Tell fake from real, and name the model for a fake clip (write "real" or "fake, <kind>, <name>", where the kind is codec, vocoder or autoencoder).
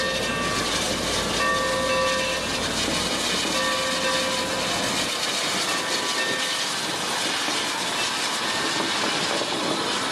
real